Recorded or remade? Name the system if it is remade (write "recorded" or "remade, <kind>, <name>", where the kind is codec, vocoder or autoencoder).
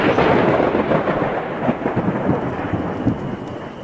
recorded